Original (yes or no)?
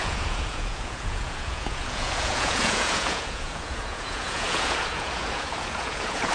no